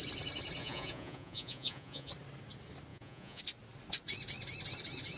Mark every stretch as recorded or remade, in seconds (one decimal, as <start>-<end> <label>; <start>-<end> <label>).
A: 0.0-0.6 recorded; 0.6-2.1 remade; 2.1-2.9 recorded; 2.9-3.4 remade; 3.4-5.2 recorded